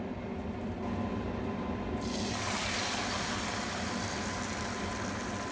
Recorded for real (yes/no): yes